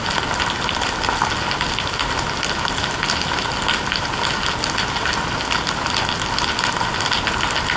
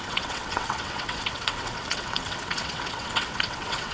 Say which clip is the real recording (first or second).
first